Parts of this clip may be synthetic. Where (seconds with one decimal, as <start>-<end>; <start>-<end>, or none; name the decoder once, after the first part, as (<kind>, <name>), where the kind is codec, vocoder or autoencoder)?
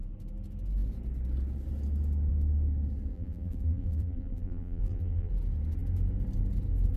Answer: 3.1-5.3 (vocoder, BigVGAN v2)